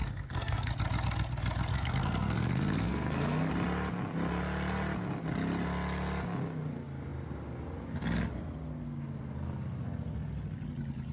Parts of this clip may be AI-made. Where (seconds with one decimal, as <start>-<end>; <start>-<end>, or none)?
0.0-0.7; 1.7-3.5